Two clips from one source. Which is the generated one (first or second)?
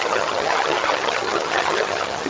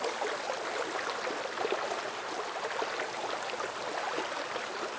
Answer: first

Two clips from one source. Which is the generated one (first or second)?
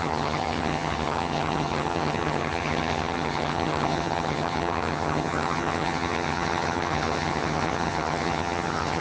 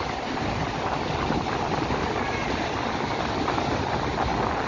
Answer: first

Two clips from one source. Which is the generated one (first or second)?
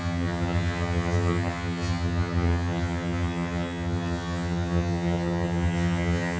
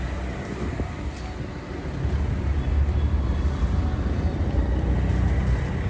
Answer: first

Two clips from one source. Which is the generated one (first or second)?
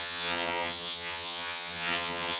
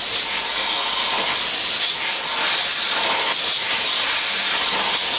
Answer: first